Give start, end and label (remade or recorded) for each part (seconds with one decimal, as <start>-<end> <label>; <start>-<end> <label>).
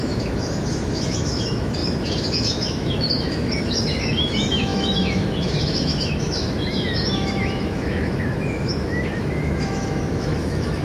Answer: 0.0-10.8 remade